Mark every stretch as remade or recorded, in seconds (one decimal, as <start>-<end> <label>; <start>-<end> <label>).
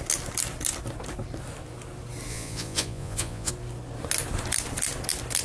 0.0-2.3 recorded; 2.3-3.5 remade; 3.5-5.4 recorded